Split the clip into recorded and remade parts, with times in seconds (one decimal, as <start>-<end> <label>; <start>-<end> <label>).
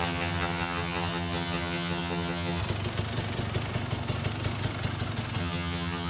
0.0-2.6 remade; 2.6-5.4 recorded; 5.4-6.1 remade